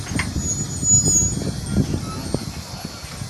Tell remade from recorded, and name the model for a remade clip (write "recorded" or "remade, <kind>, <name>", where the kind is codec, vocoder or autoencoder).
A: recorded